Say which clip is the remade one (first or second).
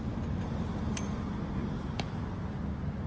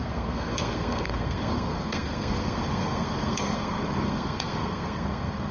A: second